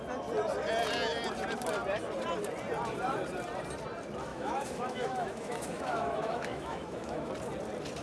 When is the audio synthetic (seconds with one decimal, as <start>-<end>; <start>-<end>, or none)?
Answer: 4.3-7.3